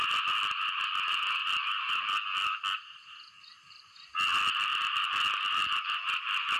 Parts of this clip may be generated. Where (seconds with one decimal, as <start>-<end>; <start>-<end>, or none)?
1.4-1.9; 4.3-6.6